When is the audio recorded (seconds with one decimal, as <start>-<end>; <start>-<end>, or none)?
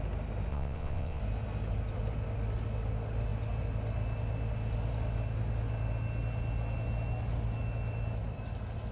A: 0.0-0.5; 1.2-8.9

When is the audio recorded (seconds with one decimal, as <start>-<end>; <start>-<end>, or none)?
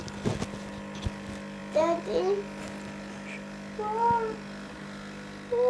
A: 0.0-5.7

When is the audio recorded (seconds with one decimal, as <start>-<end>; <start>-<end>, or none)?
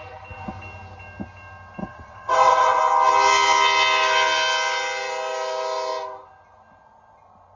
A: 0.0-1.8; 2.8-7.6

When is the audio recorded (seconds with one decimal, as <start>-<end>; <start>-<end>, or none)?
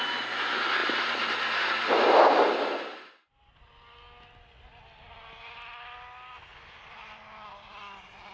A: 0.0-8.3